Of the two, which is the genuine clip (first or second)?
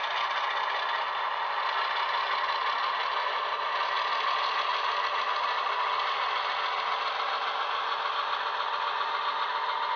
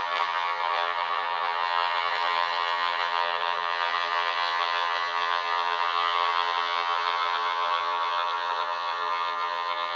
first